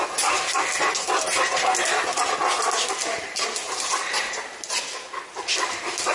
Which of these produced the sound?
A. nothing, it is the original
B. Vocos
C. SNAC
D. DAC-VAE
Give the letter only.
A